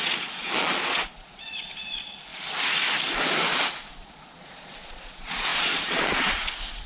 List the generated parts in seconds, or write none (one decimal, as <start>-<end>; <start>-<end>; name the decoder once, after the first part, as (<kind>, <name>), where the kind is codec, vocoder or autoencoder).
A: 0.0-2.3 (vocoder, Vocos); 3.9-6.9